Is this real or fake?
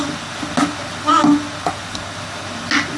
real